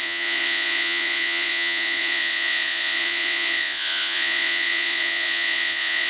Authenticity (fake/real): fake